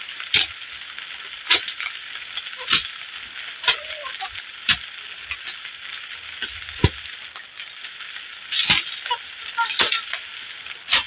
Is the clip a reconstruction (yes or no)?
no